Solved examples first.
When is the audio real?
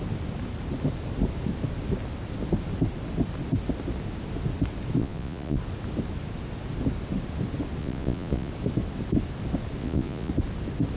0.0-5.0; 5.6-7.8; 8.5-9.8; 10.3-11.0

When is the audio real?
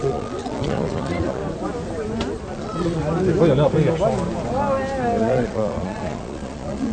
1.4-2.5; 3.0-5.2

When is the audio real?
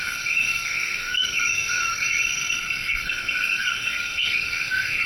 none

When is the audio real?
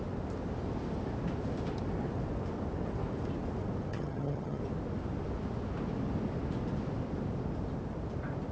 0.0-3.9; 4.6-8.5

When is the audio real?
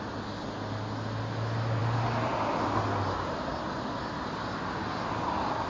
0.0-5.7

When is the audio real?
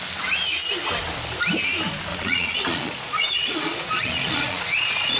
0.0-2.1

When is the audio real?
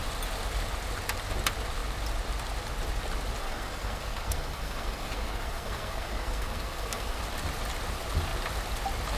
0.0-3.4; 7.2-9.2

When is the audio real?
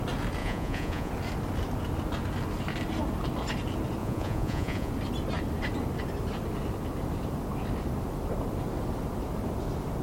0.0-0.4; 1.1-4.0; 4.9-10.0